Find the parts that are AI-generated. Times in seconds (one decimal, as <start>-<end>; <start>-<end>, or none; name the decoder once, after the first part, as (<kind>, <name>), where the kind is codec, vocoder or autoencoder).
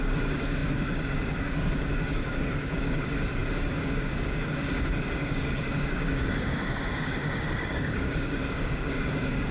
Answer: 0.0-9.5 (codec, DAC)